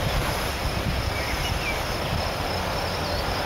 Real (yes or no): yes